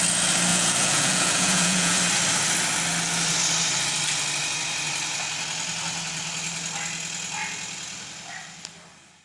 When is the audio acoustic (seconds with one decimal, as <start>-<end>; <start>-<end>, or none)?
0.0-0.5; 2.0-9.2